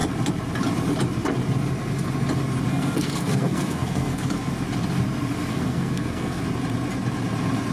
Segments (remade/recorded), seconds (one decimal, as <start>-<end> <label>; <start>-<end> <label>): 0.0-2.7 recorded; 2.7-4.5 remade; 4.5-5.5 recorded; 5.5-6.4 remade; 6.4-7.7 recorded